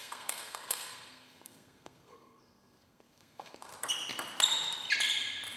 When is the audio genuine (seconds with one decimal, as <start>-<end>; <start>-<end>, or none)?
3.7-5.6